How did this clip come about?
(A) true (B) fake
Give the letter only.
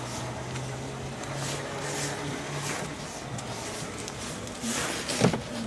A